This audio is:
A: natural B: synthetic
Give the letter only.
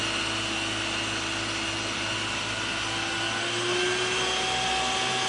A